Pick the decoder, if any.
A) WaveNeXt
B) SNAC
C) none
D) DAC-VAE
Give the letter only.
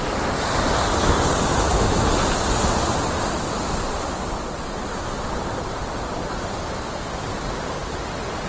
C